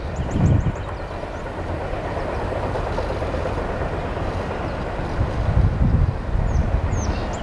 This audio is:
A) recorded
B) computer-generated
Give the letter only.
A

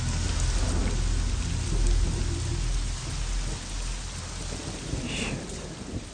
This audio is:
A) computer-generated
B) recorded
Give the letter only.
B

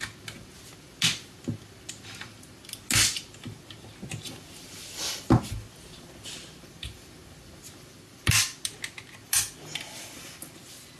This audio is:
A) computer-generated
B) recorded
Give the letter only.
B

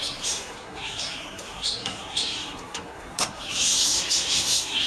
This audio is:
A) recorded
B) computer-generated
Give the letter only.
B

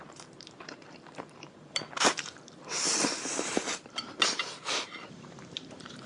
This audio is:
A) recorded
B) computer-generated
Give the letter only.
B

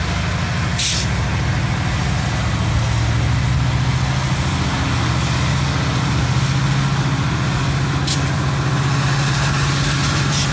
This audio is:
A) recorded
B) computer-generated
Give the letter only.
A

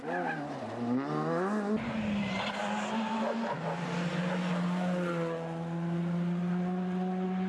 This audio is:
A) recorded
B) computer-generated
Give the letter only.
A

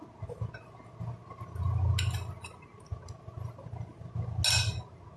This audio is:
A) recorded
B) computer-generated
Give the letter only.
A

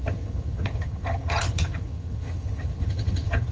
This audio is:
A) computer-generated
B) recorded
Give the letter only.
A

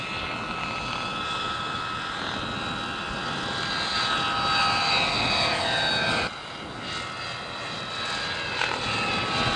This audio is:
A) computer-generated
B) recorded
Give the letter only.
B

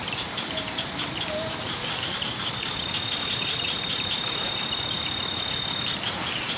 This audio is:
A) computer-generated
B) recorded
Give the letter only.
A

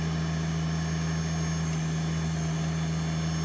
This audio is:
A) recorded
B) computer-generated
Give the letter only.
A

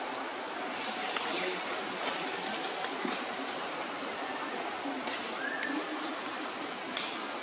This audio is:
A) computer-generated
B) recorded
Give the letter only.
B